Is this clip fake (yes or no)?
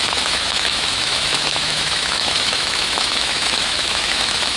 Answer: yes